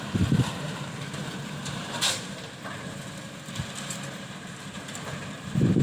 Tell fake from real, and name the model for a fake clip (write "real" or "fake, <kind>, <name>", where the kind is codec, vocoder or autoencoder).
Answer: fake, vocoder, BigVGAN v2